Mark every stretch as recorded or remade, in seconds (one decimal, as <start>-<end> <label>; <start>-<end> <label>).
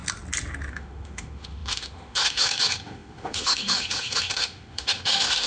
0.0-0.7 recorded; 0.7-5.5 remade